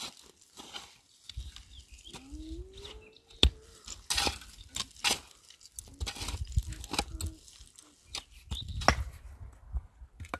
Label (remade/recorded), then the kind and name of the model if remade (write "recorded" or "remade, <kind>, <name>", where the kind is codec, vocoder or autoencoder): recorded